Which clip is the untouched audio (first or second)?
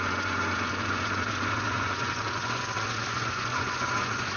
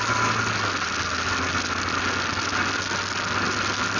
second